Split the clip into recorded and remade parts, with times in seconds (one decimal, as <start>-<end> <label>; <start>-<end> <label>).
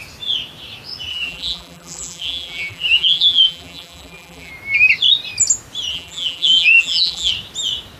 0.0-1.1 recorded; 1.1-4.5 remade; 4.5-5.9 recorded; 5.9-7.3 remade; 7.3-8.0 recorded